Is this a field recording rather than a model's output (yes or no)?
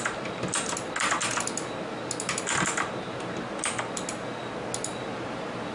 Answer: yes